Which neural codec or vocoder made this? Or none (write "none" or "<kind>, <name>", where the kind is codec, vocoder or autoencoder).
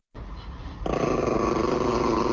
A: none